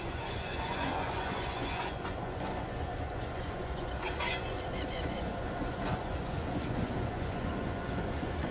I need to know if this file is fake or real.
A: fake